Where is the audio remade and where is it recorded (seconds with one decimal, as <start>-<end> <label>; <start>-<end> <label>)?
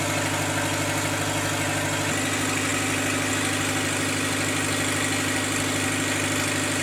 0.0-6.8 recorded